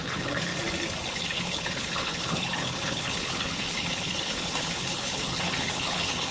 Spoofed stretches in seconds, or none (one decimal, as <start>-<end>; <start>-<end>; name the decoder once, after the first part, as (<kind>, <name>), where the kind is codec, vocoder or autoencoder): 0.0-0.5 (codec, HILCodec); 1.1-6.3

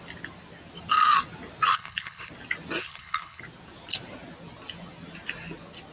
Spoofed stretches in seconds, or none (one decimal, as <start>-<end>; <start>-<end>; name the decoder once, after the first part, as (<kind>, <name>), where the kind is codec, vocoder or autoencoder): 1.7-2.3 (codec, HILCodec); 2.8-3.4

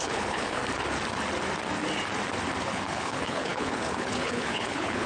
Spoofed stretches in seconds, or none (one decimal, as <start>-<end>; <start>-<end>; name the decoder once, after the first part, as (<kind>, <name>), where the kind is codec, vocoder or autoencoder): 0.0-0.6 (codec, HILCodec); 2.6-5.1

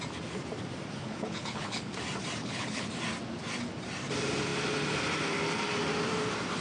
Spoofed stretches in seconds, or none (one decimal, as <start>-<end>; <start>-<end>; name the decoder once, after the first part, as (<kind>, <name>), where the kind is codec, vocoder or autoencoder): 1.0-1.9 (codec, HILCodec); 2.4-2.9

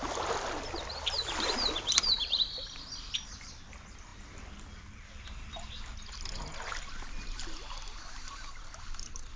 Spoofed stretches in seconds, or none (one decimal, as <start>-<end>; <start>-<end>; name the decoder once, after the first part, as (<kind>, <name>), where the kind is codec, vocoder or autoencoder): none

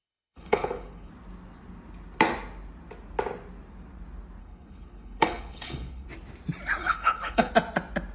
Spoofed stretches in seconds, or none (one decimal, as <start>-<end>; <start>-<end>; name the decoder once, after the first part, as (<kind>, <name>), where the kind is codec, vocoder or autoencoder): 0.0-1.1 (codec, HILCodec); 4.4-6.1; 6.8-7.5

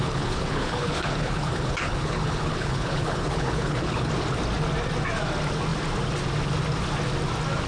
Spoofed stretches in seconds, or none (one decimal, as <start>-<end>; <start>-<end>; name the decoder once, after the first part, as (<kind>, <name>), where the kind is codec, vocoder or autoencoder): 0.0-4.1 (codec, HILCodec)